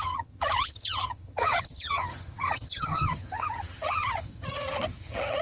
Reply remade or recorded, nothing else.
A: remade